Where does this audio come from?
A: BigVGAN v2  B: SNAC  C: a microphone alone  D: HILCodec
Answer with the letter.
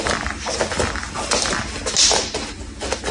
C